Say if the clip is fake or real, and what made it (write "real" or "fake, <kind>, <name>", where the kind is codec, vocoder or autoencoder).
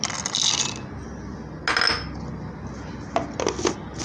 real